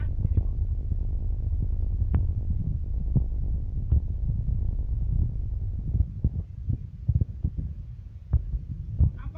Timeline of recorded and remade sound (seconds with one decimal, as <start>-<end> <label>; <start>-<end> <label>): 0.0-2.6 remade; 2.6-4.4 recorded; 4.4-9.4 remade